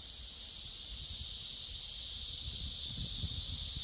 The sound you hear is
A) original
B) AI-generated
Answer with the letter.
A